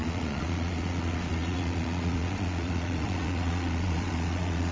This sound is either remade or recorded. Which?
remade